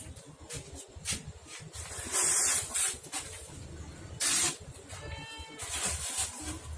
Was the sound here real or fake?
real